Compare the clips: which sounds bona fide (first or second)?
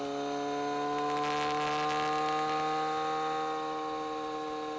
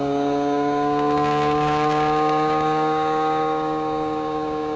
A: first